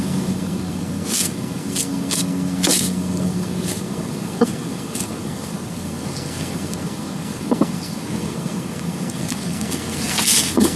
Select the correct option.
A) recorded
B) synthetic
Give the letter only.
B